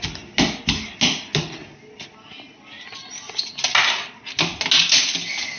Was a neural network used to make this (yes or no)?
no